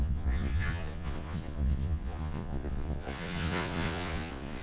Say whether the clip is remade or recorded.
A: remade